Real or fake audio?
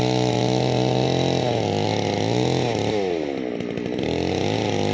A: real